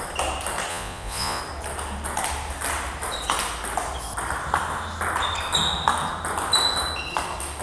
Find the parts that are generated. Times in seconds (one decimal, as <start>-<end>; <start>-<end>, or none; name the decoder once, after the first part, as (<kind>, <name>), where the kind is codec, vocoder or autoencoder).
0.7-1.4 (vocoder, Vocos)